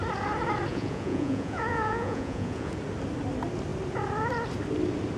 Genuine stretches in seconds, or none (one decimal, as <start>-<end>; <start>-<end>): 0.0-0.7; 2.7-5.2